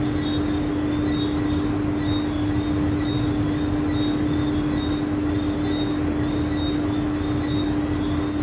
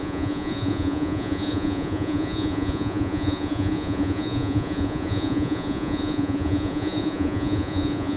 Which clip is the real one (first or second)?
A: first